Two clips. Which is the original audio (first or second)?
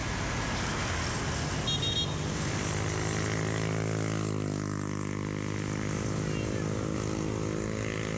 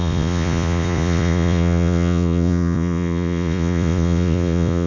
first